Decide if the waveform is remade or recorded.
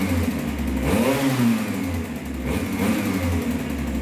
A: recorded